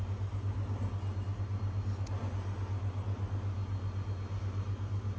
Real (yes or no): yes